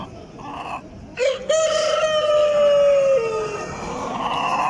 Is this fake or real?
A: real